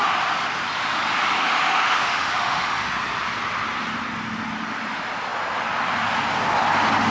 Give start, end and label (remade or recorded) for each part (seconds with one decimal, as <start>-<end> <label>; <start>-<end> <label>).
0.0-1.4 recorded; 1.4-2.9 remade; 2.9-7.1 recorded